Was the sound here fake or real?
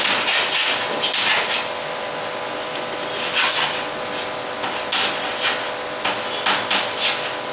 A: real